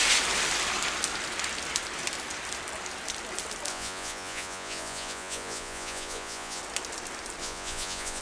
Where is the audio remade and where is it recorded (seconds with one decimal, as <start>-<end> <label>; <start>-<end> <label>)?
0.0-3.7 recorded; 3.7-6.6 remade; 6.6-7.4 recorded; 7.4-8.2 remade